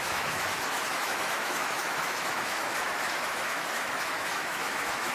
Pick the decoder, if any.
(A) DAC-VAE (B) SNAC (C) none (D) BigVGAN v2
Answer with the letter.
A